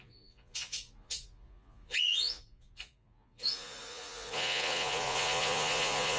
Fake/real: fake